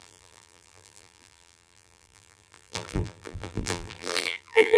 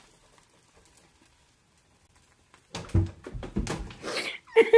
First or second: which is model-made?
first